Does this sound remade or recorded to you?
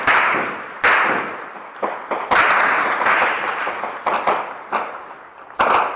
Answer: recorded